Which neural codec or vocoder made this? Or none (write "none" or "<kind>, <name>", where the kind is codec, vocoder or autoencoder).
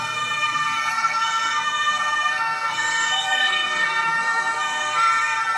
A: codec, SNAC